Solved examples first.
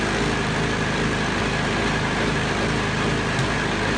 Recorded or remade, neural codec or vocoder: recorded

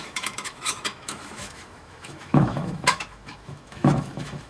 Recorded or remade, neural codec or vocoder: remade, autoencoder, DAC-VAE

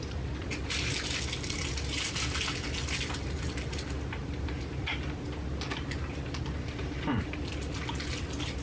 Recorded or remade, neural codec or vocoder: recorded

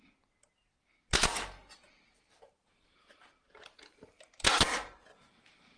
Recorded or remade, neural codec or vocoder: recorded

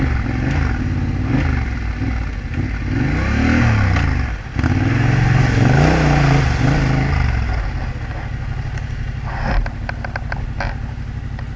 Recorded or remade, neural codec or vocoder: recorded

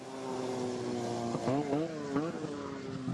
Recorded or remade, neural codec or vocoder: recorded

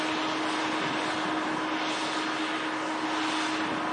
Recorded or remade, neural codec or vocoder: recorded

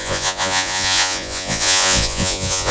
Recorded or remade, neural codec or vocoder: remade, vocoder, Vocos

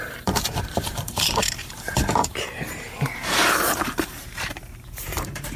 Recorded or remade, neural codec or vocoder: remade, vocoder, BigVGAN v2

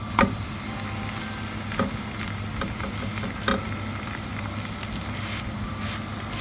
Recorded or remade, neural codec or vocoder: recorded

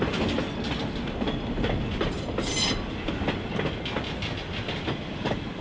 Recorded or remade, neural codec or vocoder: recorded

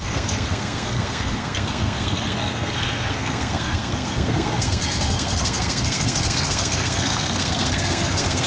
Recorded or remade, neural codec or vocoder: remade, codec, SNAC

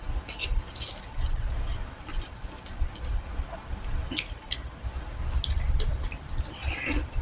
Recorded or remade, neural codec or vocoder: recorded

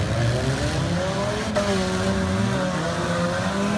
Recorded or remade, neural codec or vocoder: recorded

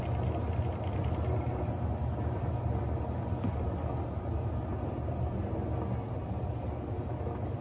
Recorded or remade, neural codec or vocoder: recorded